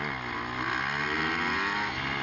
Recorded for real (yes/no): yes